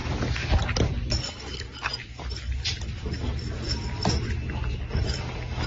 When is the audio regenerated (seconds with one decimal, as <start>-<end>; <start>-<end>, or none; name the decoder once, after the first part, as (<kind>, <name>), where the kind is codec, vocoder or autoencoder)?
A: 1.9-5.3 (vocoder, BigVGAN v2)